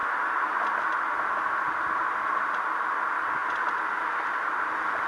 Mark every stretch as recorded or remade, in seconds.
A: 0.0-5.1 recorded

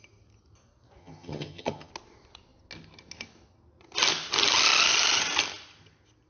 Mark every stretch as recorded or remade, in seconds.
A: 0.0-1.0 recorded; 1.0-1.9 remade; 1.9-6.3 recorded

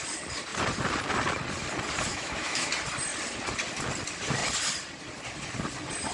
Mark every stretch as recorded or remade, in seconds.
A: 0.0-2.1 recorded; 2.1-2.7 remade; 2.7-6.1 recorded